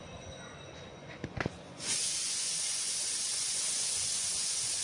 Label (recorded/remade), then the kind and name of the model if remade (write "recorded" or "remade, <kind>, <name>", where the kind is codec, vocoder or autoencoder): remade, vocoder, Vocos